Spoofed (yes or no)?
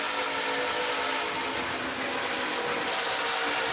no